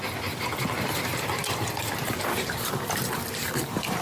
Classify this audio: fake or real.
fake